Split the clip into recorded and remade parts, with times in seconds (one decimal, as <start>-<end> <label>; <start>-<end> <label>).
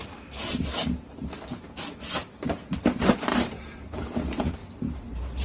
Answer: 0.0-3.3 recorded; 3.3-4.0 remade; 4.0-4.6 recorded; 4.6-5.4 remade